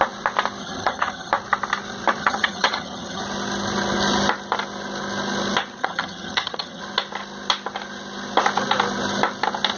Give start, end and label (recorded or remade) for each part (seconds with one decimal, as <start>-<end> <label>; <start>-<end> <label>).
0.0-0.6 recorded; 0.6-1.3 remade; 1.3-2.2 recorded; 2.2-3.2 remade; 3.2-5.8 recorded; 5.8-6.8 remade; 6.8-9.8 recorded